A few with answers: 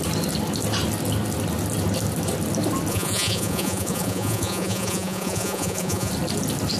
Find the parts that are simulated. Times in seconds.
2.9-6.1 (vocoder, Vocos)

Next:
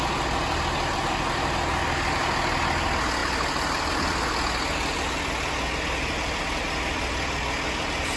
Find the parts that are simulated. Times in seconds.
3.2-3.9 (vocoder, BigVGAN v2)

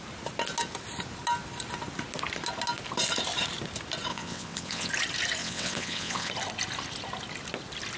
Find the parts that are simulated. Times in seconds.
4.1-4.9 (vocoder, WaveNeXt); 5.4-6.3

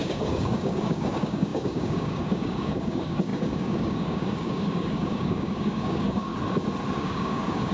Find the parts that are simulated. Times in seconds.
0.0-6.3 (codec, DAC); 6.9-7.7

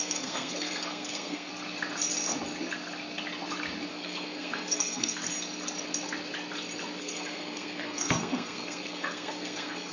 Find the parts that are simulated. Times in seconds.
0.0-1.5 (codec, SNAC); 3.9-5.2; 7.0-9.9

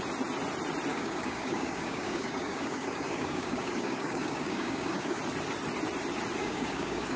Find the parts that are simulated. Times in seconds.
0.9-5.2 (codec, DAC); 6.4-7.2

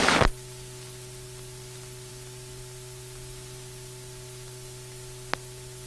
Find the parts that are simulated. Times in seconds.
none

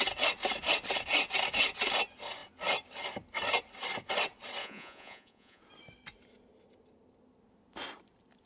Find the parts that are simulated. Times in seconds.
4.6-5.6 (vocoder, Vocos)